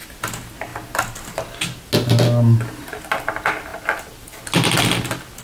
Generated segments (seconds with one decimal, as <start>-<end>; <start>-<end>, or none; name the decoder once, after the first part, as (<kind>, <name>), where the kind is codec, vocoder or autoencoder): none